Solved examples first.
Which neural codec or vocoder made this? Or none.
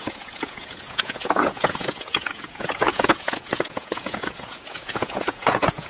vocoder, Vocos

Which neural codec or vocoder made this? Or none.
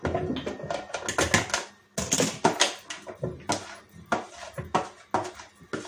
none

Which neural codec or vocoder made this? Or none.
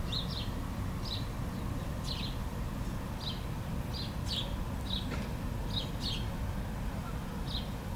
none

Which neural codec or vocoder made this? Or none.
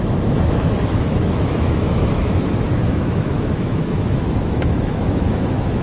autoencoder, DAC-VAE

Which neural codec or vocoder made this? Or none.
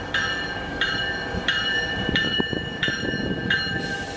vocoder, BigVGAN v2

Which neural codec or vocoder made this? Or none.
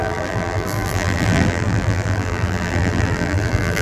vocoder, BigVGAN v2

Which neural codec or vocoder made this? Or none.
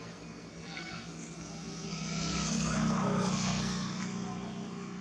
codec, SNAC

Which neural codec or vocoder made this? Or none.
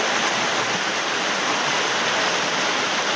none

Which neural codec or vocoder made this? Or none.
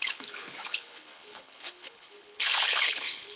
codec, HILCodec